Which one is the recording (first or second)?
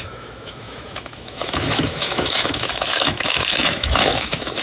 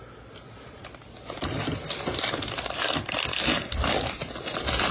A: second